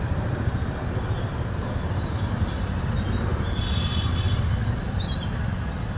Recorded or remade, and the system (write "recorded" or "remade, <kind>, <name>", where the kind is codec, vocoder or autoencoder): recorded